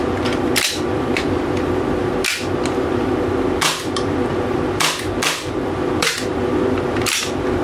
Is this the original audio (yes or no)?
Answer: no